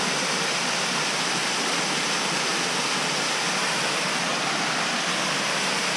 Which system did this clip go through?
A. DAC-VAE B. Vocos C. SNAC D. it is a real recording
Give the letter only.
D